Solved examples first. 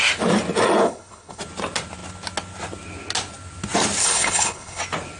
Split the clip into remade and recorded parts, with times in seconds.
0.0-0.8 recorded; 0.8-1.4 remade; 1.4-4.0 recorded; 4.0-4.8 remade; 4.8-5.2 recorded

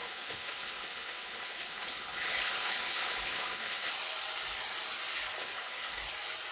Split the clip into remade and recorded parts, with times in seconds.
0.0-3.9 remade; 3.9-5.4 recorded; 5.4-6.0 remade; 6.0-6.5 recorded

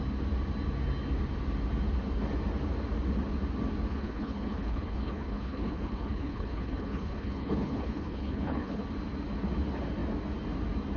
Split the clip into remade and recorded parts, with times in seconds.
0.0-3.9 recorded; 3.9-8.8 remade; 8.8-11.0 recorded